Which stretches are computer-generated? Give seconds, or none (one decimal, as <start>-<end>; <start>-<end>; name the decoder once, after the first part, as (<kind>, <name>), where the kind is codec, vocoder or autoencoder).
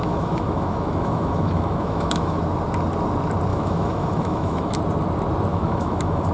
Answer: 0.0-2.4 (autoencoder, DAC-VAE); 3.5-4.8; 5.5-6.3